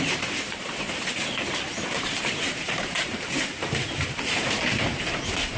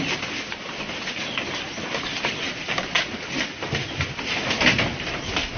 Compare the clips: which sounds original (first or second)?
second